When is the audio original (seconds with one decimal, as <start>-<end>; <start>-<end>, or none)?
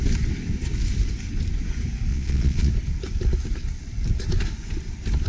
0.0-2.1; 2.7-5.3